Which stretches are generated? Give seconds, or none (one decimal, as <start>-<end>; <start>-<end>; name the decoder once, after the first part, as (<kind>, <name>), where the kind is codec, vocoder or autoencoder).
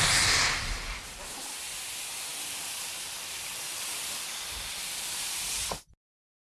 none